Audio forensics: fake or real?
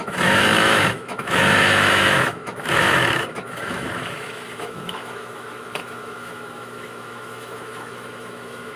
fake